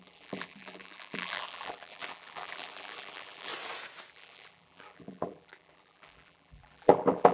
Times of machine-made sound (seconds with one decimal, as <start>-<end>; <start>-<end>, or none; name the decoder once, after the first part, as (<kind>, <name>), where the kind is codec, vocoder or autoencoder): 0.0-3.5 (vocoder, BigVGAN v2); 4.1-7.3